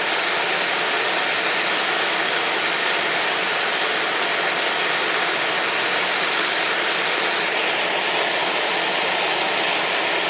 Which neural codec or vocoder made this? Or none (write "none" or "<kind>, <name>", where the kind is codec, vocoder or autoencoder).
none